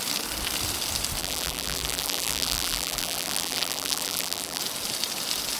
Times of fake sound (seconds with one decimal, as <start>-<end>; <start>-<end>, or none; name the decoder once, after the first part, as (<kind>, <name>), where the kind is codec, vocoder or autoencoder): 1.2-4.6 (vocoder, BigVGAN v2)